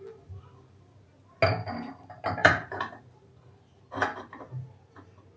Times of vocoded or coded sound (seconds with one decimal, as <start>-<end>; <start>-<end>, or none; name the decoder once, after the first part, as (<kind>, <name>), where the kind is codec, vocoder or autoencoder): 2.4-3.6 (vocoder, BigVGAN v2)